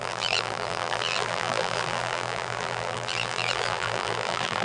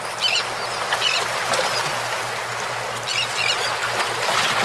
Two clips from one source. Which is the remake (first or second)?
first